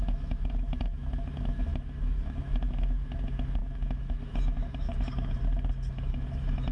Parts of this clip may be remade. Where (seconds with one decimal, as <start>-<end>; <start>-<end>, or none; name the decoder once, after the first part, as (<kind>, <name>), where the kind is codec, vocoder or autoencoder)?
0.0-5.4 (autoencoder, DAC-VAE); 5.9-6.7